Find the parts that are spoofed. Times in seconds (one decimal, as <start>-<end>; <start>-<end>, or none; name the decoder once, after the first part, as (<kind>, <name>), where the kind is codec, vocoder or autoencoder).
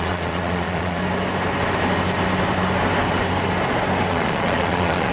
0.0-1.0 (vocoder, Vocos); 4.1-5.1